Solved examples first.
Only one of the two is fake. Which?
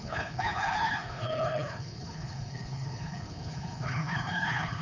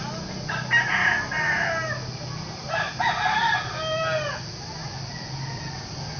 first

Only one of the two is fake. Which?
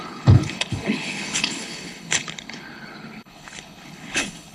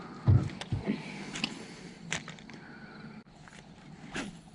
first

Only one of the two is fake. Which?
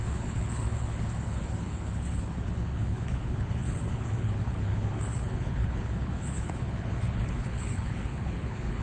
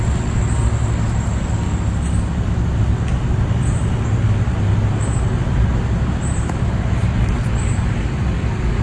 first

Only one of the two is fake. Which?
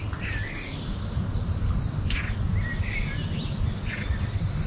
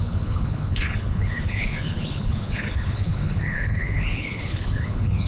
second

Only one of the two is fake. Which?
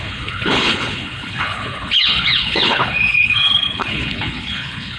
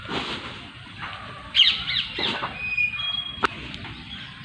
first